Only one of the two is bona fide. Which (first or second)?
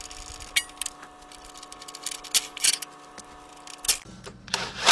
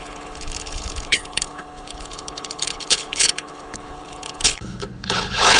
first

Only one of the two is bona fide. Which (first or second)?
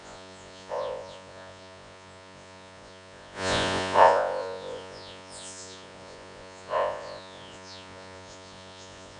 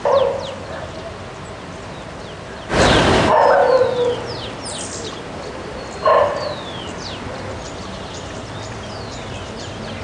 second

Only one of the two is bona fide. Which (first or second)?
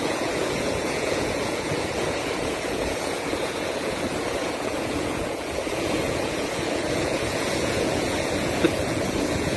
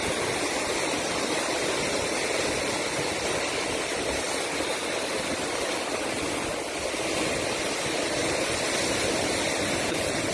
second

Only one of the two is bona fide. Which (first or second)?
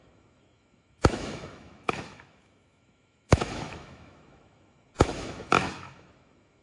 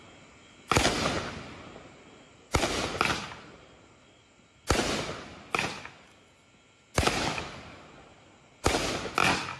second